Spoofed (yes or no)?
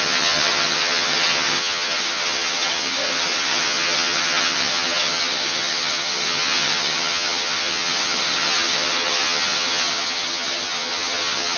yes